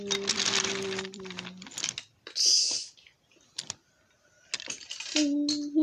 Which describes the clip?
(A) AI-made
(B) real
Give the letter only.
B